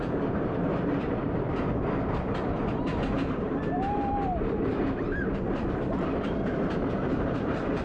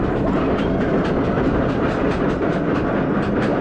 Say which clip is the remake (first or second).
first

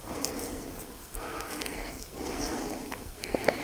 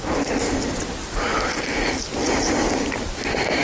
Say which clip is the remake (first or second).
first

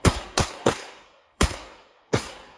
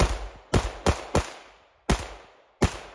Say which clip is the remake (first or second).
first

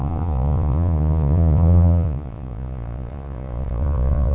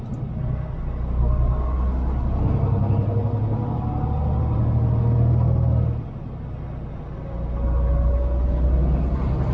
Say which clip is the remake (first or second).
first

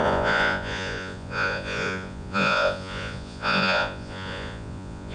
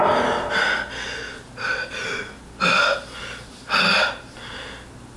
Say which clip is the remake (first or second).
first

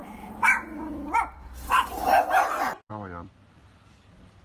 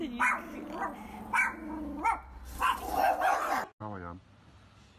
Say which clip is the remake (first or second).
first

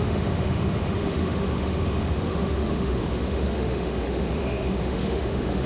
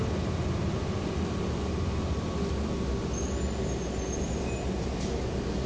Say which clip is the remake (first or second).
first